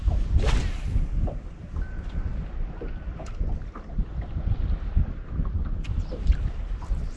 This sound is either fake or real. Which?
real